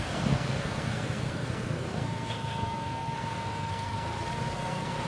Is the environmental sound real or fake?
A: fake